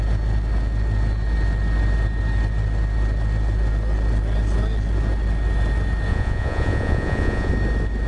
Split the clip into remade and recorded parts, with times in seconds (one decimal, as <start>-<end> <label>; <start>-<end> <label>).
0.0-6.1 recorded; 6.1-7.5 remade; 7.5-8.1 recorded